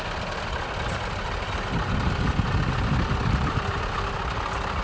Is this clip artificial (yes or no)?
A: no